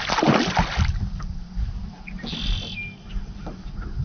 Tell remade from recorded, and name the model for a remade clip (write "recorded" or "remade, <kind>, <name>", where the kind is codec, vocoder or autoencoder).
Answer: recorded